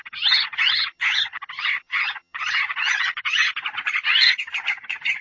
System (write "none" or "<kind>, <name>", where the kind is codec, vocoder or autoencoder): vocoder, HiFi-GAN